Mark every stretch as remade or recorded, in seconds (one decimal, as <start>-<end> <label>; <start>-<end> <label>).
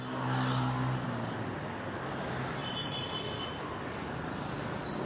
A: 0.0-5.1 recorded